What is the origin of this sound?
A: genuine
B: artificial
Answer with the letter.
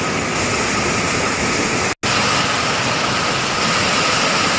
A